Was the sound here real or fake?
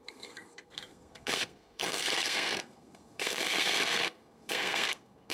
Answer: fake